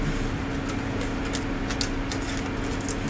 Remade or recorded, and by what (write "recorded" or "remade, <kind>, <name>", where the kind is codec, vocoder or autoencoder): recorded